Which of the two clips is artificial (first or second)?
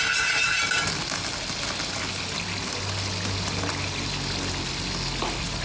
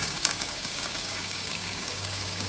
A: second